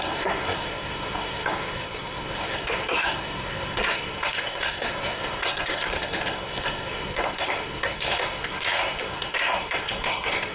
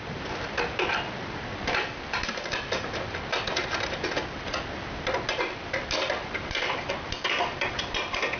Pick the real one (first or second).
second